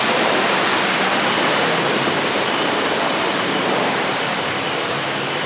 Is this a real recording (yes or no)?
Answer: no